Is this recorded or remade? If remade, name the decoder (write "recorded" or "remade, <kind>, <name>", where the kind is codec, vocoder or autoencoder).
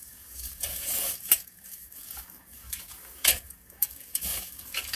remade, codec, DAC